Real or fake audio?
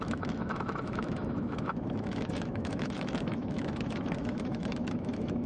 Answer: fake